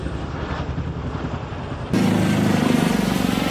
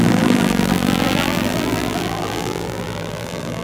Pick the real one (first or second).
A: first